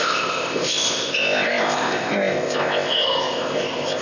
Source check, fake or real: fake